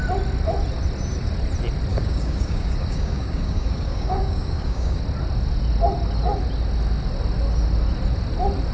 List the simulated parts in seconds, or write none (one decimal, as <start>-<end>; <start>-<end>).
1.9-5.0